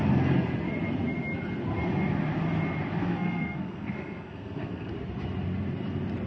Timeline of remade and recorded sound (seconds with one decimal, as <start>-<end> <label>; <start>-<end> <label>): 0.0-3.0 recorded; 3.0-4.9 remade; 4.9-6.3 recorded